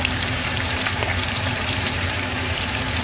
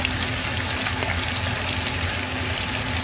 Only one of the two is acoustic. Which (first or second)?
second